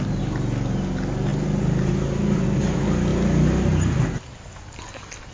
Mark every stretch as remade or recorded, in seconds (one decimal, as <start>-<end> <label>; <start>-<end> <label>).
0.0-5.3 recorded